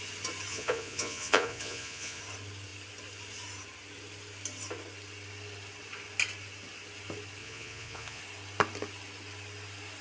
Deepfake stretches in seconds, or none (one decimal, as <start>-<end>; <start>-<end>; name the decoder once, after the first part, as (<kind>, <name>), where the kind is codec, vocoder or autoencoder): 0.5-2.2 (vocoder, Vocos); 7.4-8.2